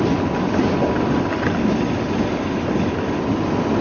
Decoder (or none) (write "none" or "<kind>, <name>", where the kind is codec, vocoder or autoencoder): none